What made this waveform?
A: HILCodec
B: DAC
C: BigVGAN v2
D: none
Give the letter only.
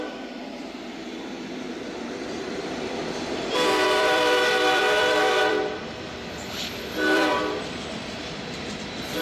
C